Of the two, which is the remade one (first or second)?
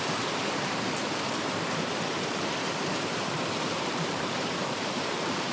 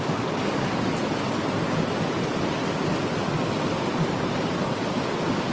first